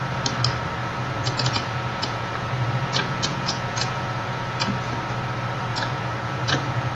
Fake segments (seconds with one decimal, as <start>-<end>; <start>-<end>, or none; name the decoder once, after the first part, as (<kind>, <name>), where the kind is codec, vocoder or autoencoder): 0.8-4.9 (vocoder, Vocos); 5.7-6.9